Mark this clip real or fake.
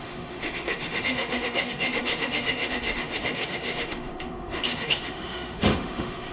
fake